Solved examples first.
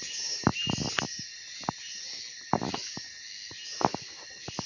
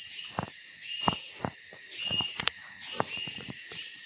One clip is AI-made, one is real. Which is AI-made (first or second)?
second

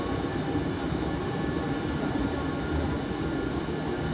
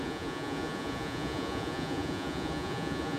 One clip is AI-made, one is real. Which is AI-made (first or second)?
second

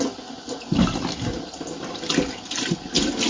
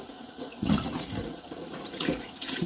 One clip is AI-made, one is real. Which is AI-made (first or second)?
second